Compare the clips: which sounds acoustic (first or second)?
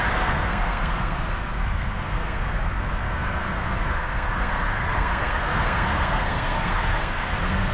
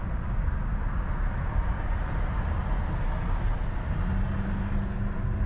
second